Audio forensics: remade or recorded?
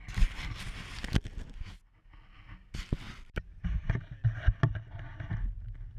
recorded